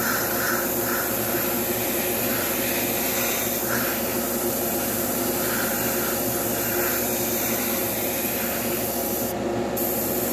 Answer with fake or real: real